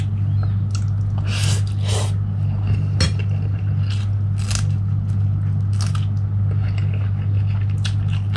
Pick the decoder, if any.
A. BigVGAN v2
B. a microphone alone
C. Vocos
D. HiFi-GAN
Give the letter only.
B